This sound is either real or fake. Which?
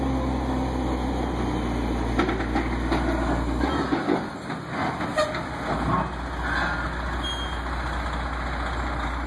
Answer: real